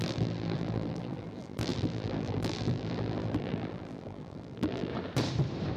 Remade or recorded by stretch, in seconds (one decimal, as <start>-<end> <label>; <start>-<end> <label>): 0.0-4.9 remade; 4.9-5.8 recorded